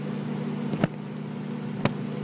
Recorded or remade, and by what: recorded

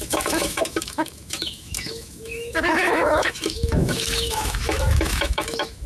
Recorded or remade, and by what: remade, autoencoder, DAC-VAE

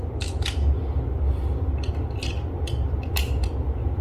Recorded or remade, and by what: recorded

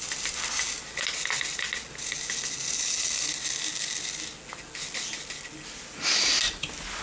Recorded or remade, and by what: recorded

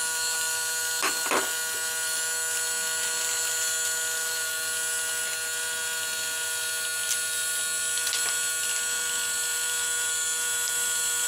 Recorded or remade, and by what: recorded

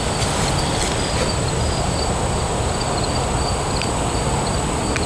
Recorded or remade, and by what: recorded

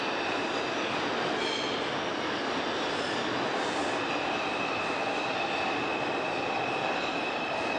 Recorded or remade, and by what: recorded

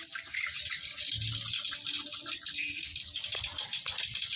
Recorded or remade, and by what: recorded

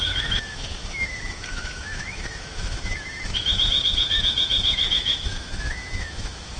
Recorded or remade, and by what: remade, autoencoder, DAC-VAE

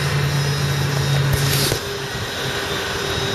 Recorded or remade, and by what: recorded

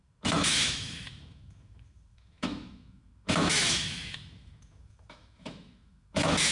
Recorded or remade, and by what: remade, autoencoder, DAC-VAE